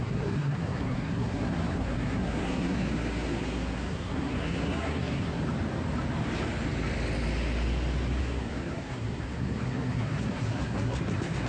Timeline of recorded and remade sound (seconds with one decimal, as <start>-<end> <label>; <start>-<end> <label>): 0.0-5.4 remade; 5.4-8.2 recorded; 8.2-11.5 remade